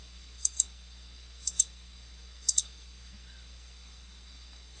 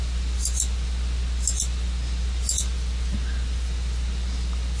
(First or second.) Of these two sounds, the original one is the second